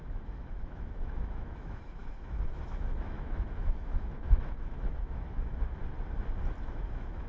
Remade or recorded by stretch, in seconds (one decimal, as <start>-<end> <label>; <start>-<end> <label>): 0.0-5.8 remade; 5.8-6.6 recorded; 6.6-7.3 remade